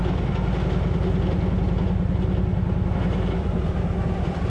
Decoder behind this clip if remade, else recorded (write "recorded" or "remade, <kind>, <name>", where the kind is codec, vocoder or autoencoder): recorded